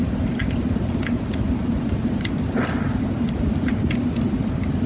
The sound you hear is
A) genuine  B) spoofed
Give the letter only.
A